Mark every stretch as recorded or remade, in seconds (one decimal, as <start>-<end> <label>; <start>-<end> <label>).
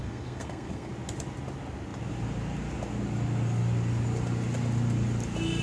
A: 0.0-0.9 remade; 0.9-5.6 recorded